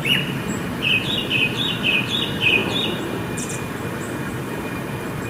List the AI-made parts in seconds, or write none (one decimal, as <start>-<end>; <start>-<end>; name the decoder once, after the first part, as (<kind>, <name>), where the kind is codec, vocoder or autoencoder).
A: 0.0-5.3 (vocoder, BigVGAN v2)